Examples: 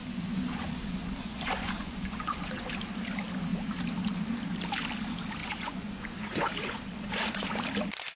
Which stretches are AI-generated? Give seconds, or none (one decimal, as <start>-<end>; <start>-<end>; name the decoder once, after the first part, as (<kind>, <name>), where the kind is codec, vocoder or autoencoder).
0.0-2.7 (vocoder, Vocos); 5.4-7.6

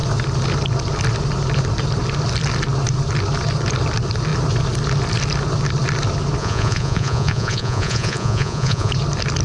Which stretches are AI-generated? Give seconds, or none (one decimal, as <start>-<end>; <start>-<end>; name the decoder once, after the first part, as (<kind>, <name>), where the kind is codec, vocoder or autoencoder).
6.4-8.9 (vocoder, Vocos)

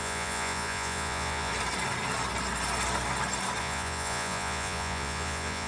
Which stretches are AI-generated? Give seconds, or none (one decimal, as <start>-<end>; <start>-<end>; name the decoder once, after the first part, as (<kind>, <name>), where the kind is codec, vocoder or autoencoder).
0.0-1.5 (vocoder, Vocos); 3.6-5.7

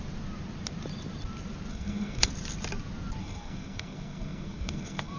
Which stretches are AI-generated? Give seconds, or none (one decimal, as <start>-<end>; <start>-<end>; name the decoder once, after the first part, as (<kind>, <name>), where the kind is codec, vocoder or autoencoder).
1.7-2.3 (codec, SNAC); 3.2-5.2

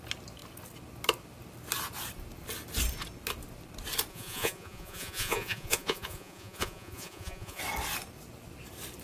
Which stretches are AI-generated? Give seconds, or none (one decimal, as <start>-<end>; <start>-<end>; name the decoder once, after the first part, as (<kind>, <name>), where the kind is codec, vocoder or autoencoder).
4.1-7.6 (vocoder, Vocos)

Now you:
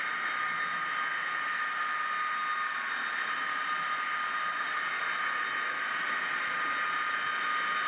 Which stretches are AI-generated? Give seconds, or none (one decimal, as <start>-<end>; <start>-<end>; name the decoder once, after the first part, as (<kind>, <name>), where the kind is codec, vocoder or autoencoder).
none